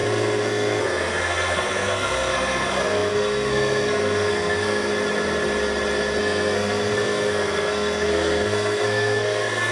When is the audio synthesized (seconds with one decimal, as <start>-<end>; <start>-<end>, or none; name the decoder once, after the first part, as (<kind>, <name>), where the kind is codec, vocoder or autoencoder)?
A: 0.0-4.9 (codec, SNAC); 6.2-9.7